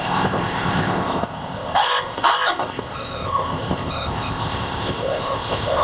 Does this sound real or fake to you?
fake